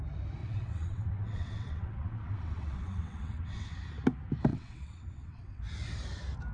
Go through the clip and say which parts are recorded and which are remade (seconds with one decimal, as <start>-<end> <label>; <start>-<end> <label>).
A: 0.0-0.4 recorded; 0.4-3.7 remade; 3.7-4.5 recorded; 4.5-5.6 remade; 5.6-6.5 recorded

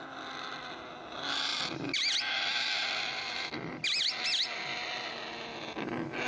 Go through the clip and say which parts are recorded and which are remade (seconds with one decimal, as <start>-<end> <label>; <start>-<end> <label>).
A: 0.0-6.3 recorded

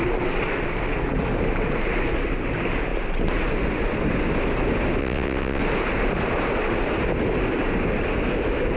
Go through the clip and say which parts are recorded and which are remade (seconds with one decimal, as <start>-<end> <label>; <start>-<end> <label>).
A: 0.0-5.0 recorded; 5.0-5.6 remade; 5.6-8.8 recorded

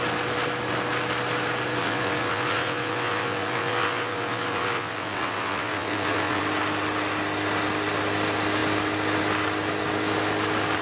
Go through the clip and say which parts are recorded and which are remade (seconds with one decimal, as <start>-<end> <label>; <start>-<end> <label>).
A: 0.0-1.8 recorded; 1.8-6.4 remade; 6.4-10.8 recorded

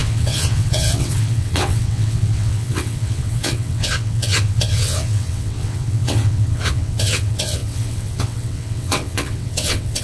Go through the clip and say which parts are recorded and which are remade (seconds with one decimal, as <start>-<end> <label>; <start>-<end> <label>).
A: 0.0-10.0 remade

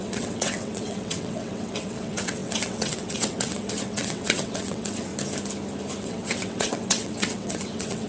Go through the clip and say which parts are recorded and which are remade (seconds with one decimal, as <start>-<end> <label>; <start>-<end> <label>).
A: 0.0-5.1 remade; 5.1-6.0 recorded; 6.0-8.1 remade